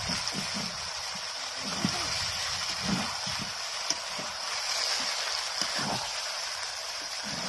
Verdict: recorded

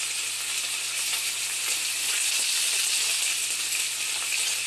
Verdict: remade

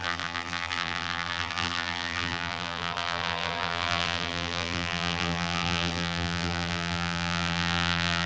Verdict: remade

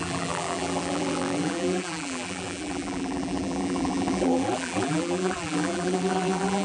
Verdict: remade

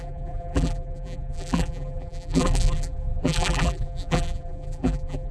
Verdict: remade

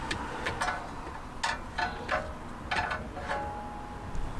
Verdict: recorded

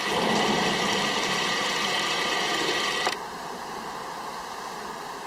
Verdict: remade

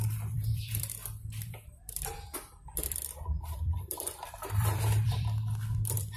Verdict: remade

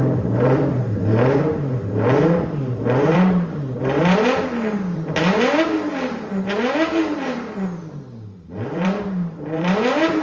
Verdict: remade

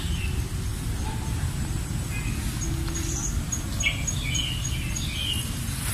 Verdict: recorded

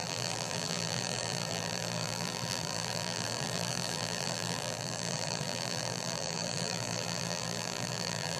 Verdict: remade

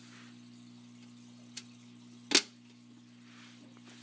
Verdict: recorded